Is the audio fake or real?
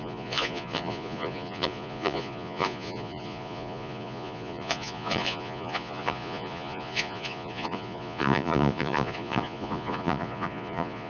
fake